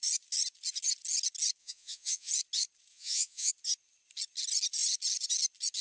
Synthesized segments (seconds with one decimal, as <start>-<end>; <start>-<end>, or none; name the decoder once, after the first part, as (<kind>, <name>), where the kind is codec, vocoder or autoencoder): 1.6-2.3 (vocoder, Vocos); 2.9-3.5